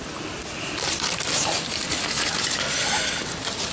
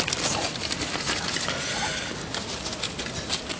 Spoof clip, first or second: first